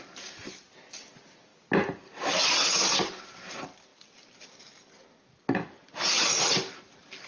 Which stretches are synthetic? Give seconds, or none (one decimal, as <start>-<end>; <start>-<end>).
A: none